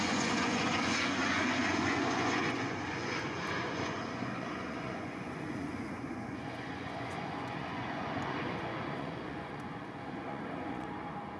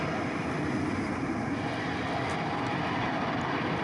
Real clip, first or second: second